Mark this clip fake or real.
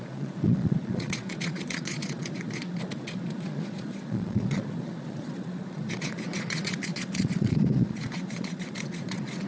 fake